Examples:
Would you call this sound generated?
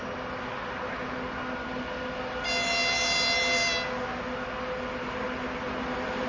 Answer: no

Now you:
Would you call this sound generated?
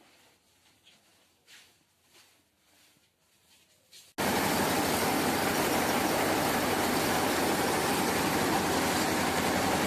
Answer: no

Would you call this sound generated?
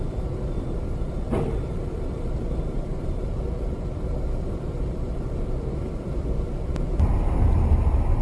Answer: yes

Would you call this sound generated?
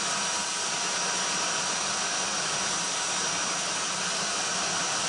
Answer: no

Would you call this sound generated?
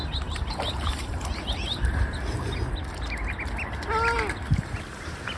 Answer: no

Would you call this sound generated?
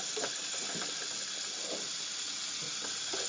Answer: no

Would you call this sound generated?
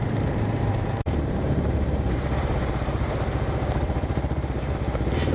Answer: yes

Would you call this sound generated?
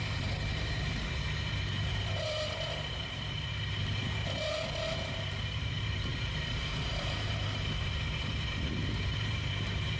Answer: yes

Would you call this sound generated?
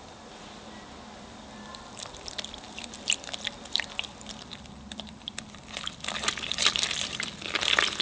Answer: yes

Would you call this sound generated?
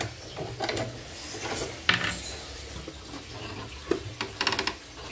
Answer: no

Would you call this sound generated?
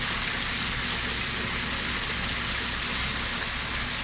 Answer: no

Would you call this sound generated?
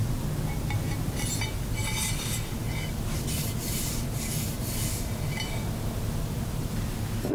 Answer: no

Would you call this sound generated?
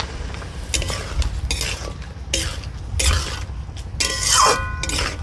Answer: no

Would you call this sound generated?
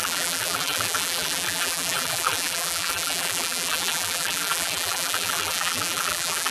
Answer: yes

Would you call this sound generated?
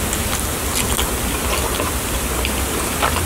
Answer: no